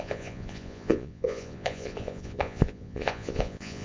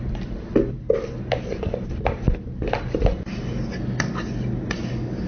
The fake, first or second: first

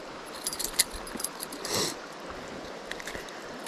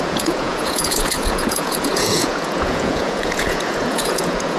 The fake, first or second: second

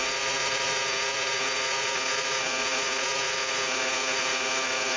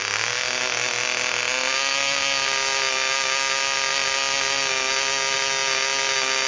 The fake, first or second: first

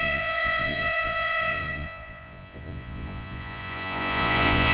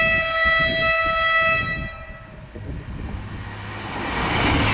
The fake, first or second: first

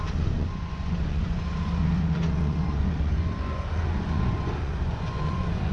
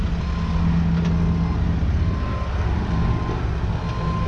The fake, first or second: first